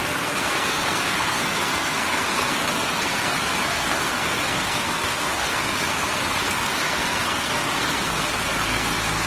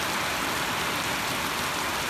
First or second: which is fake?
first